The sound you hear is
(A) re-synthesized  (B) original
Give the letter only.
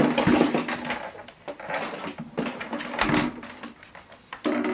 B